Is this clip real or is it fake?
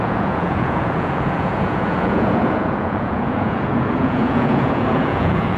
fake